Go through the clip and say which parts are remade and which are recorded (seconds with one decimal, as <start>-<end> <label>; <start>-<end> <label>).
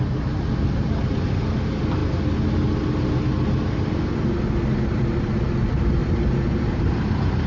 0.0-6.0 recorded; 6.0-7.5 remade